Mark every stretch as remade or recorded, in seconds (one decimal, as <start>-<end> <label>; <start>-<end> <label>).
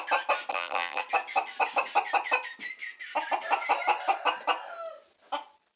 0.0-0.5 recorded; 0.5-1.0 remade; 1.0-5.8 recorded